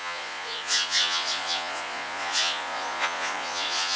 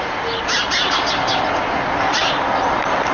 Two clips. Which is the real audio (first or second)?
second